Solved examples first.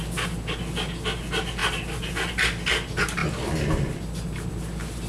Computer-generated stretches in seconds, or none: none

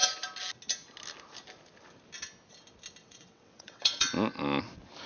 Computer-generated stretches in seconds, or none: 3.0-4.1 (vocoder, WaveNeXt)

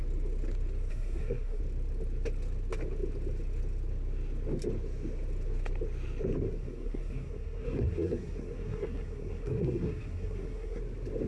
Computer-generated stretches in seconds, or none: 0.9-1.6 (codec, SNAC); 6.6-10.8

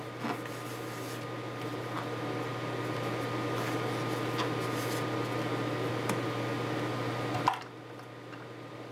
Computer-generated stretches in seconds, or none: none

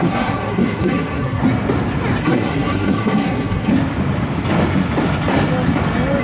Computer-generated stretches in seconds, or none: 0.0-1.4 (codec, SNAC); 2.2-3.7

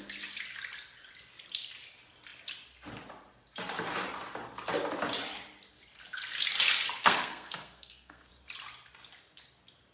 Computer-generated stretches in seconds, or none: 7.0-8.3 (codec, SNAC)

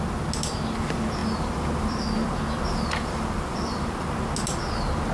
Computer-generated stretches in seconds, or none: 1.2-4.3 (vocoder, BigVGAN v2)

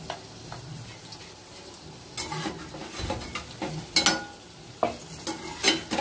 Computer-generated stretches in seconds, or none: none